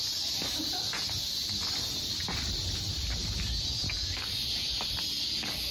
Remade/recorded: recorded